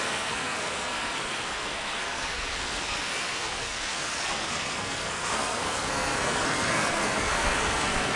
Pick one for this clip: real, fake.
fake